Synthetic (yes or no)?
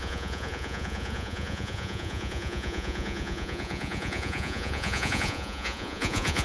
yes